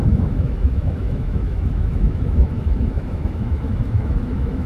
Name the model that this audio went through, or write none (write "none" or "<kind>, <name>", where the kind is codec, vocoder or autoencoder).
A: autoencoder, DAC-VAE